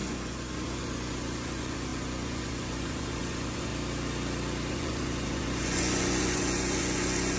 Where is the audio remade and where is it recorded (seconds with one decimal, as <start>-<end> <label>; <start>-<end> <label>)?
0.0-3.7 remade; 3.7-4.7 recorded; 4.7-7.4 remade